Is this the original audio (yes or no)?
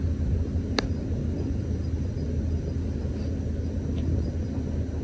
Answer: yes